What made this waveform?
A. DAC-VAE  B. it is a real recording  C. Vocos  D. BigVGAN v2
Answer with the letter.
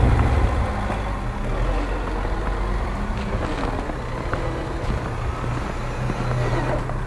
B